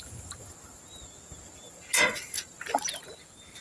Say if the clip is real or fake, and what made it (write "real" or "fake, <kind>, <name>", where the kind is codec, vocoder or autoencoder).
real